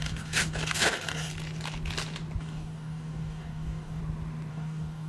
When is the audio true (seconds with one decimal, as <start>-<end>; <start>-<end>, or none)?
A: 1.3-2.4; 4.0-4.5